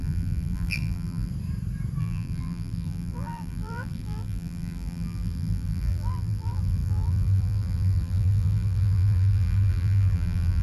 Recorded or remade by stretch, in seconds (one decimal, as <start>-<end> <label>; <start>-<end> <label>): 0.0-1.3 remade; 1.3-2.0 recorded; 2.0-10.6 remade